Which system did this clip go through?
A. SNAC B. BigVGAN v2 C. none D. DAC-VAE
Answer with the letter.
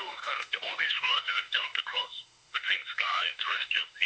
D